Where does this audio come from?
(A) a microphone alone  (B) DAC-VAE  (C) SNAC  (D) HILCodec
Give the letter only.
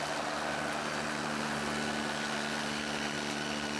A